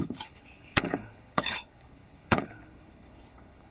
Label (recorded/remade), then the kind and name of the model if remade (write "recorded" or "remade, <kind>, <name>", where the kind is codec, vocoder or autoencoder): remade, codec, HILCodec